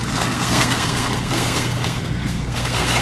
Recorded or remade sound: remade